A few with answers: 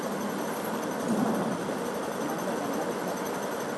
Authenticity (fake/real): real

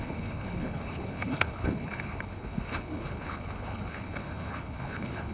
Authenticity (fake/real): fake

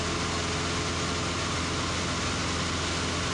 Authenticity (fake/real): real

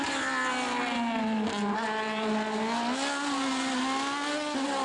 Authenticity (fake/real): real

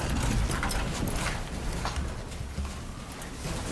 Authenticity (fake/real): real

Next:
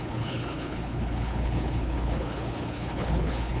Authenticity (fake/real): fake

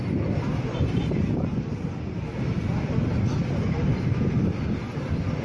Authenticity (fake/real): real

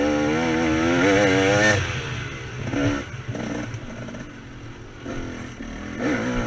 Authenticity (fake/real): real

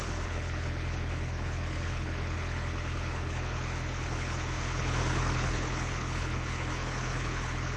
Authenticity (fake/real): fake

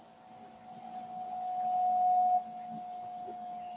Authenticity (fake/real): real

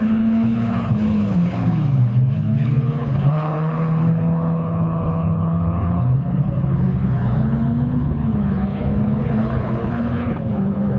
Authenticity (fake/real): fake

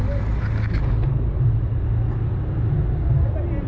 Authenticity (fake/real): real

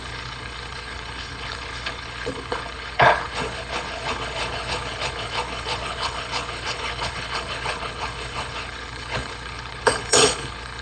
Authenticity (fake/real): fake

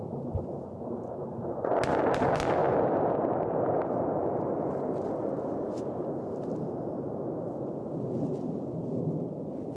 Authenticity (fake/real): real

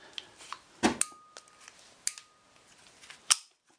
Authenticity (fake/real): real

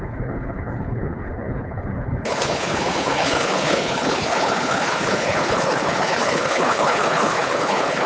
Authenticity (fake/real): fake